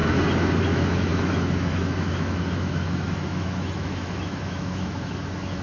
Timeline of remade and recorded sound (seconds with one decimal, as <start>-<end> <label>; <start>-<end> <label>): 0.0-0.6 recorded; 0.6-5.6 remade